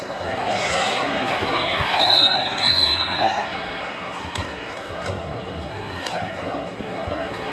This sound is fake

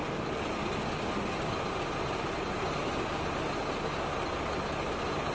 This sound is real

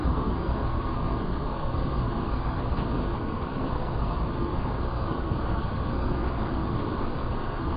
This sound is fake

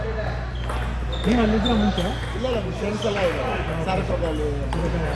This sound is real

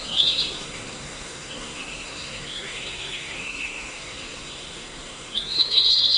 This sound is fake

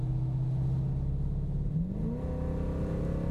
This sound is real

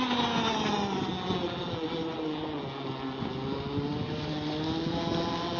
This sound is real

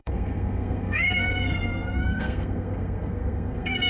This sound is fake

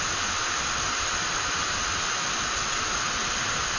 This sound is real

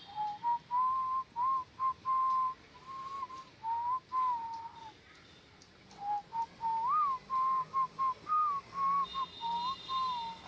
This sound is real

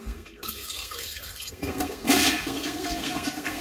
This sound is fake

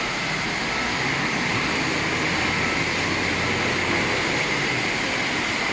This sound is real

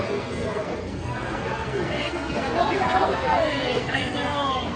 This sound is fake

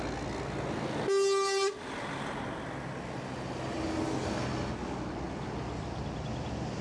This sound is real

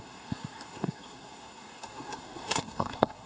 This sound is fake